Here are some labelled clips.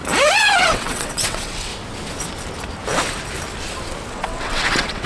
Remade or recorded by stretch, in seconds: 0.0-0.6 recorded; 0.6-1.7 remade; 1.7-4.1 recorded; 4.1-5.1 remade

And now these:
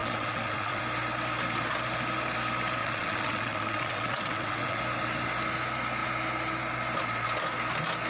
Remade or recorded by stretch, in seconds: 0.0-0.8 remade; 0.8-2.8 recorded; 2.8-4.8 remade; 4.8-8.1 recorded

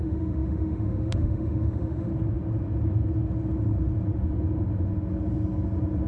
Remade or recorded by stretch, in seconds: 0.0-2.1 remade; 2.1-6.1 recorded

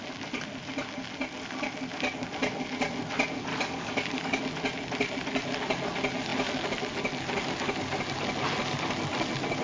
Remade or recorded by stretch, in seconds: 0.0-3.5 recorded; 3.5-4.4 remade; 4.4-9.6 recorded

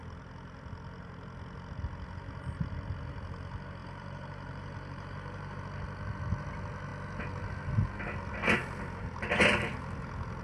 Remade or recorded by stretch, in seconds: 0.0-3.8 recorded; 3.8-5.6 remade; 5.6-10.4 recorded